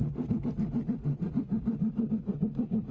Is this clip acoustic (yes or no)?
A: no